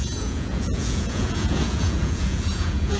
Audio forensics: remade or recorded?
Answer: remade